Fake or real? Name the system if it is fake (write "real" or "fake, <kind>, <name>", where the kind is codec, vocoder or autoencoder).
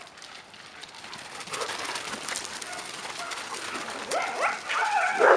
real